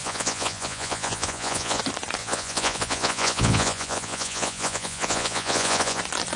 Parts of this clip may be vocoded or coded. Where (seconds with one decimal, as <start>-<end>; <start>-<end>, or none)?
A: 0.0-1.8; 2.2-6.0